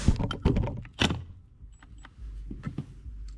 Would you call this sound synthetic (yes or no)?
no